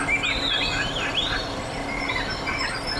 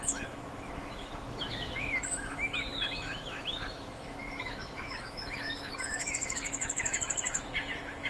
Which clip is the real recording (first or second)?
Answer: first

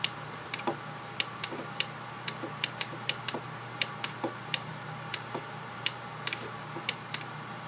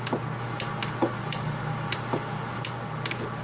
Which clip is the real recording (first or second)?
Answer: second